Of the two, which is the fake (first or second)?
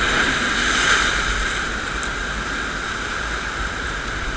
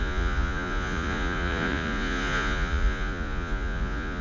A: second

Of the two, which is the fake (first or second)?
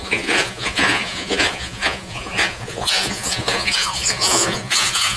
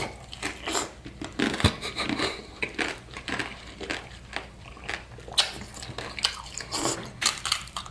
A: first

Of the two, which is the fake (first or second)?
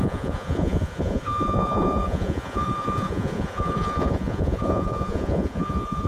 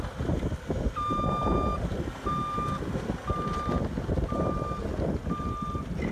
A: first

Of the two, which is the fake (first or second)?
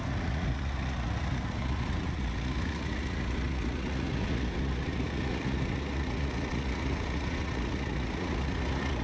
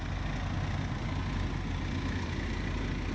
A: first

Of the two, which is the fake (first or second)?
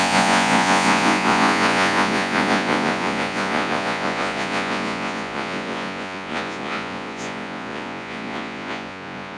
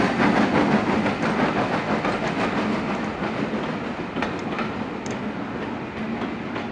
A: first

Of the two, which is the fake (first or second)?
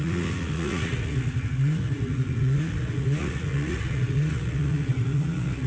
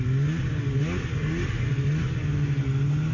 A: first